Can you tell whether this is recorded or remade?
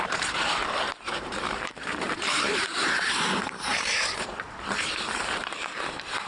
remade